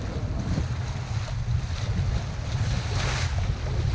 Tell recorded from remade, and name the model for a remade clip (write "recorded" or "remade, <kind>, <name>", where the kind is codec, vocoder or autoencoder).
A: recorded